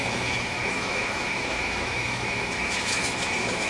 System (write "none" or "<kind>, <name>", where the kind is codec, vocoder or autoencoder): autoencoder, DAC-VAE